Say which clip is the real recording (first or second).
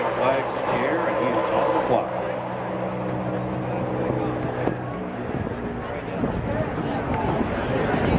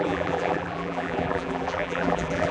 first